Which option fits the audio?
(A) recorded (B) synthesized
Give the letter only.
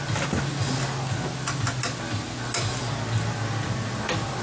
A